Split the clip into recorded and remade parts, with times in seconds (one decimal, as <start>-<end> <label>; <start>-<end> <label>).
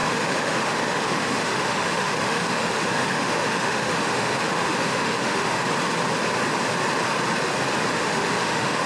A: 0.0-5.6 remade; 5.6-7.9 recorded; 7.9-8.9 remade